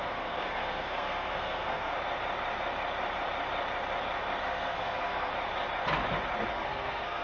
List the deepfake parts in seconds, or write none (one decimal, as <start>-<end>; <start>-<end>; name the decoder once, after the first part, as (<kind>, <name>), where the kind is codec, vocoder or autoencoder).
0.0-1.9 (codec, SNAC); 4.4-5.3; 6.5-7.2